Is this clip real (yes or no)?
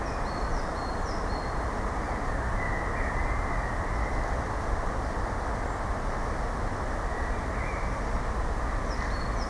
yes